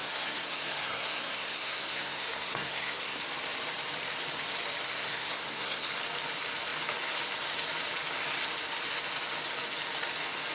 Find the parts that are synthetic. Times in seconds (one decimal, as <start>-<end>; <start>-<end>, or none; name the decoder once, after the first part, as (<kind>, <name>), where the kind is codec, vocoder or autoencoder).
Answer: 0.0-3.2 (codec, SNAC); 4.9-5.9